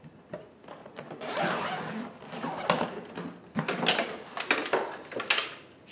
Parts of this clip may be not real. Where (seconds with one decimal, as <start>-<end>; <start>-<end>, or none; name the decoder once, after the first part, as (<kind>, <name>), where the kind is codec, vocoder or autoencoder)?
0.8-1.4 (vocoder, Vocos)